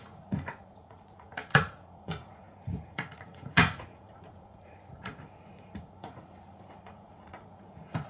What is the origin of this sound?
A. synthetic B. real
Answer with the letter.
A